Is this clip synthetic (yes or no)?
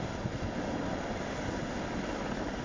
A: no